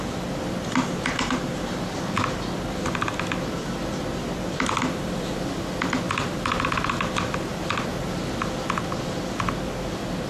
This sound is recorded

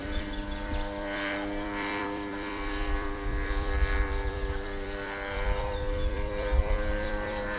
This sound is remade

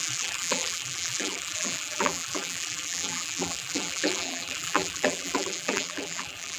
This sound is remade